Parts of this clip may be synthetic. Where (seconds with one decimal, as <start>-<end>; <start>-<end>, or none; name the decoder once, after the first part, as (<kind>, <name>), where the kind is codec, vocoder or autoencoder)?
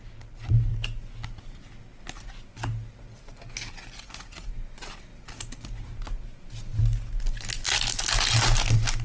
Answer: none